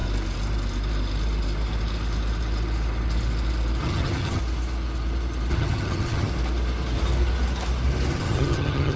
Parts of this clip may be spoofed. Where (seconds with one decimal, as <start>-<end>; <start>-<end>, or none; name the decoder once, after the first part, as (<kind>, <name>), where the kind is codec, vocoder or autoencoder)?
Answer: 3.8-4.4 (vocoder, HiFi-GAN); 5.5-6.3; 8.1-9.0